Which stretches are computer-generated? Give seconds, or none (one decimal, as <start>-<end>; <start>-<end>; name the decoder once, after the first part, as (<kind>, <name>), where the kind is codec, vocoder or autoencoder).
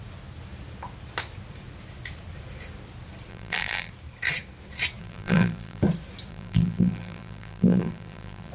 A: 3.3-3.9 (vocoder, BigVGAN v2); 5.0-5.8; 6.3-8.5